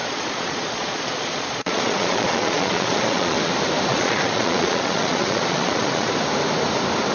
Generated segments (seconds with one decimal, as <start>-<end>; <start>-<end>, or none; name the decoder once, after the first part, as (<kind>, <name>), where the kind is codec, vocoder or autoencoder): 0.0-3.5 (vocoder, Vocos); 3.9-6.1

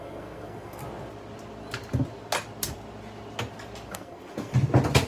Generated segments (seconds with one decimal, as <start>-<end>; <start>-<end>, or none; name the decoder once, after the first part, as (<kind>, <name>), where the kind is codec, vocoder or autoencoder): 0.0-0.8 (codec, SNAC); 3.9-4.5